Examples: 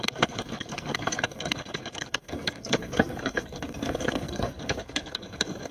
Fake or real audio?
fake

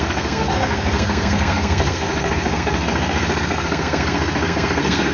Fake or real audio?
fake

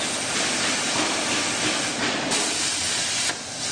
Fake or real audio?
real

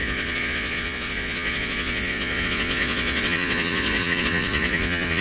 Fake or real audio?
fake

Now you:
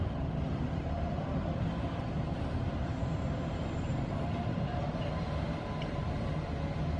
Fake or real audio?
fake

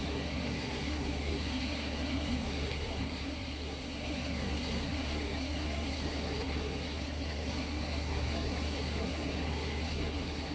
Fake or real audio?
fake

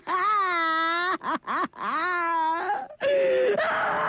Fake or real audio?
real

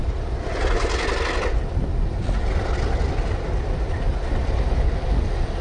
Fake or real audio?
real